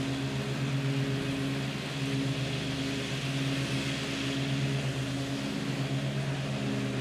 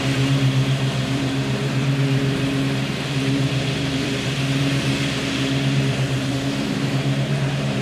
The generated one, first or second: second